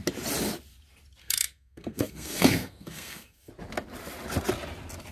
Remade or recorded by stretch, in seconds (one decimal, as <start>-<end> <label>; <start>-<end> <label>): 0.0-1.2 recorded; 1.2-3.5 remade; 3.5-5.1 recorded